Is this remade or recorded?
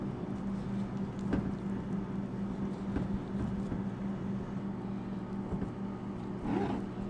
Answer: recorded